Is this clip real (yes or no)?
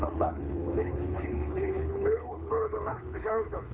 no